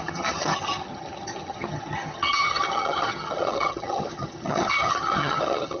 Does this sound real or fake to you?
fake